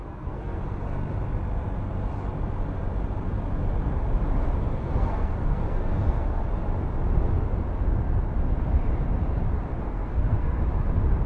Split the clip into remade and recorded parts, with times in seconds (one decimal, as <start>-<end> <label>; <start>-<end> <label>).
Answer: 0.0-0.6 remade; 0.6-4.6 recorded; 4.6-6.4 remade; 6.4-9.7 recorded; 9.7-10.6 remade; 10.6-11.3 recorded